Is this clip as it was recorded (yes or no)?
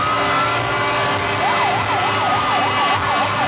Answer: yes